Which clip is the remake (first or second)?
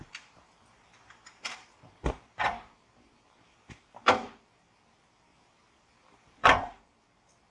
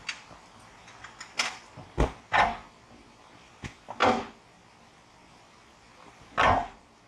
first